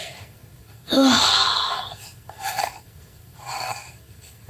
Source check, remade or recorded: remade